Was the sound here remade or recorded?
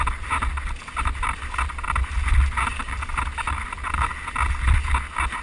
recorded